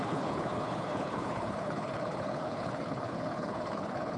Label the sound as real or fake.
fake